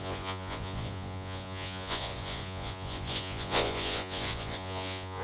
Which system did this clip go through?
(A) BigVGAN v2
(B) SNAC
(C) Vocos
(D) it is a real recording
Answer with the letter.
C